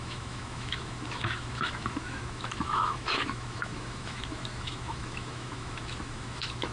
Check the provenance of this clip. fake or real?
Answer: fake